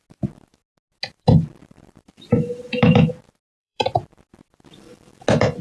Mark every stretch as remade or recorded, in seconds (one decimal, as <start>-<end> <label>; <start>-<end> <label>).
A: 0.0-1.6 recorded; 1.6-3.1 remade; 3.1-3.5 recorded; 3.5-4.1 remade; 4.1-5.6 recorded